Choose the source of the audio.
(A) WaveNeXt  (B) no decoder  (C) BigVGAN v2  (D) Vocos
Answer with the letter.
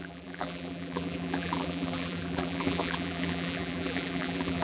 C